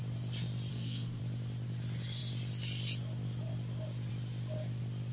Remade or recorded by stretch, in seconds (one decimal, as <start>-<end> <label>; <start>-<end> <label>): 0.0-0.7 recorded; 0.7-1.2 remade; 1.2-5.1 recorded